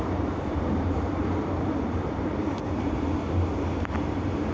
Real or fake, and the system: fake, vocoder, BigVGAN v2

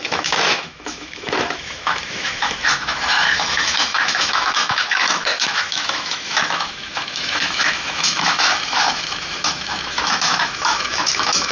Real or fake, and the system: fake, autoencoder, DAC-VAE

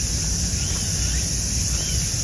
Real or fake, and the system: real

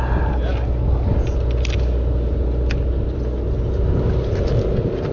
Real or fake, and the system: real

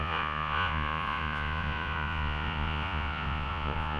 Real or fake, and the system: fake, vocoder, Vocos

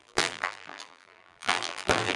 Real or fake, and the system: fake, vocoder, BigVGAN v2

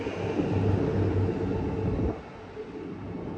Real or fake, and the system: real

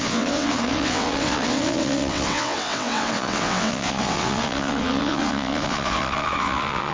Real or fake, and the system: fake, vocoder, WaveNeXt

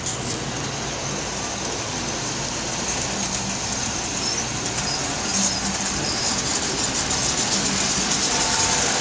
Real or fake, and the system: real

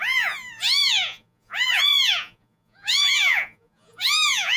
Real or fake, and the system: fake, vocoder, Vocos